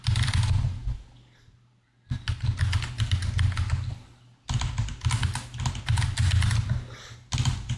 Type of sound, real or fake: real